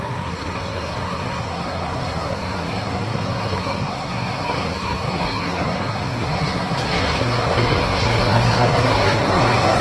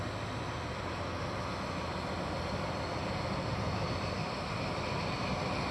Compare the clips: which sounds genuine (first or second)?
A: second